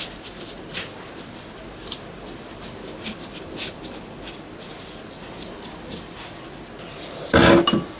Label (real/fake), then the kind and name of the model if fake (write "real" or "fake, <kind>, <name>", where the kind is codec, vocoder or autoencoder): real